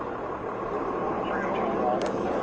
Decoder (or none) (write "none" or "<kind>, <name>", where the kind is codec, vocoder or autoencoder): none